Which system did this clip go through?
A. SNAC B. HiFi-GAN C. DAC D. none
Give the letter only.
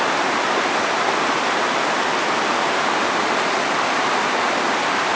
D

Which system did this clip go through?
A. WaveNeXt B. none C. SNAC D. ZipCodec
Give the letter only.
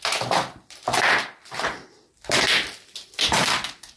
B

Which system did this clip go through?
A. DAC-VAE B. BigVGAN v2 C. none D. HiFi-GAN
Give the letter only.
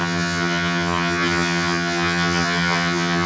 D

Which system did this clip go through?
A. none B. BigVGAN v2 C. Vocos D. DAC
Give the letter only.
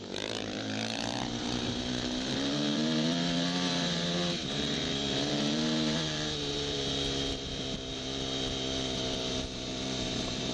B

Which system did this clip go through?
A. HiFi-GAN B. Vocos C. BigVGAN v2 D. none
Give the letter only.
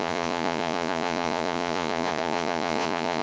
B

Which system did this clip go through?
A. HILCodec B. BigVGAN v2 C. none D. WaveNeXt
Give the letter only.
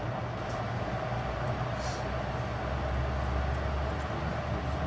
C